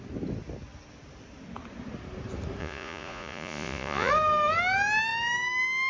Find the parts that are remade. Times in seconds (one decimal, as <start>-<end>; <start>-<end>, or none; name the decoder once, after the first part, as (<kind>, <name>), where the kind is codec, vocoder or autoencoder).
2.6-4.1 (vocoder, Vocos)